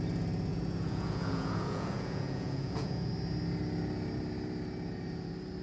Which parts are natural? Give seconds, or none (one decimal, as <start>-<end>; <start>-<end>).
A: 0.0-0.5; 3.1-5.6